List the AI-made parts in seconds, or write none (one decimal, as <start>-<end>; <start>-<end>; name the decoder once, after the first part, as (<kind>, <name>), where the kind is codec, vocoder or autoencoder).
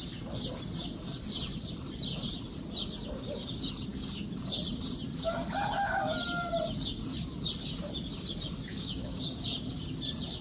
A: 8.7-9.5 (codec, DAC)